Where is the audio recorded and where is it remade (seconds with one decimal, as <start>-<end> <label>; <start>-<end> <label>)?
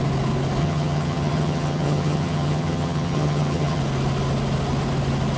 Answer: 0.0-0.6 recorded; 0.6-3.8 remade; 3.8-5.4 recorded